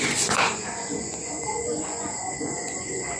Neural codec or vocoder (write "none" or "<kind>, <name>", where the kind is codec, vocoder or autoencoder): vocoder, Vocos